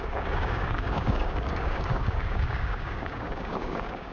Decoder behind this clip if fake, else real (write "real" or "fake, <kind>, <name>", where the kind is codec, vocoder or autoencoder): fake, codec, DAC